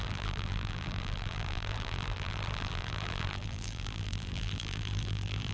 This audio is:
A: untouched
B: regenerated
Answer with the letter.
B